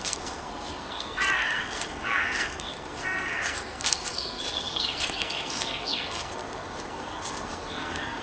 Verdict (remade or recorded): remade